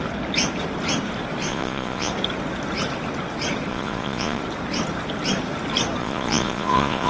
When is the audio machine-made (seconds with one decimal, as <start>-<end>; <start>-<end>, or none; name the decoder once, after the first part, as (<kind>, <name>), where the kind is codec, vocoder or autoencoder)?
1.5-2.1 (vocoder, Vocos); 3.7-4.4; 6.0-7.1